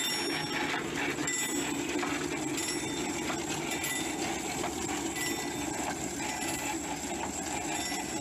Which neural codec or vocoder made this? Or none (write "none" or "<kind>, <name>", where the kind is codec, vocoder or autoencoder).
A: none